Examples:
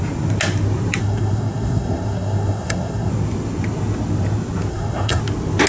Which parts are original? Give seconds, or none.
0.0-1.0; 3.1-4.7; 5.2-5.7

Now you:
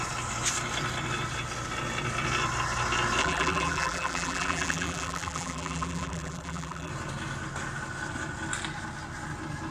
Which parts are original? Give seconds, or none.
0.0-3.2; 6.9-9.7